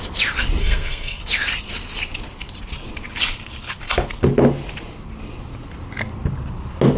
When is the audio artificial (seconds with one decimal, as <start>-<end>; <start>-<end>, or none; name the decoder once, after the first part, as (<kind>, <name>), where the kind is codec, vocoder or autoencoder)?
0.6-1.2 (codec, SNAC)